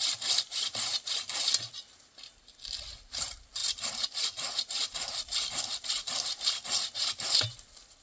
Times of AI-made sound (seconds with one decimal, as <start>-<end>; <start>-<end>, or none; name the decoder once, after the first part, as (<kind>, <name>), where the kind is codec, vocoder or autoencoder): none